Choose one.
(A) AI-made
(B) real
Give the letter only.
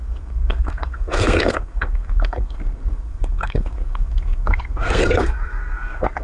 A